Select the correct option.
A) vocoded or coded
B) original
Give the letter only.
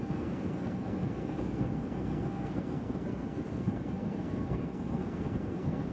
A